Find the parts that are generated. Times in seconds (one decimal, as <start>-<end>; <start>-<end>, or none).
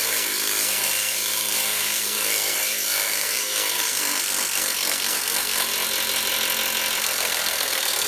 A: 0.0-5.7; 7.0-8.1